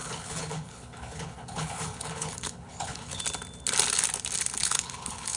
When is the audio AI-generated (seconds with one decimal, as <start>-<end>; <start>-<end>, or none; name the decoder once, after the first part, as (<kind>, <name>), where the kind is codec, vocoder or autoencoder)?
0.0-3.2 (codec, HILCodec); 4.6-5.4